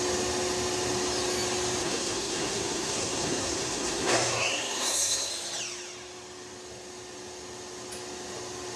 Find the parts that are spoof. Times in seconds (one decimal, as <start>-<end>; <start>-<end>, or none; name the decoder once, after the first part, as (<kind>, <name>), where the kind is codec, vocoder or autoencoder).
1.8-5.3 (codec, SNAC)